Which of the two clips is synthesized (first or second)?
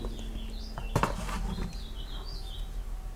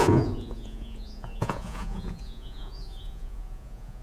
second